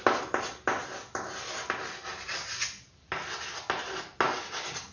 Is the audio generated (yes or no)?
no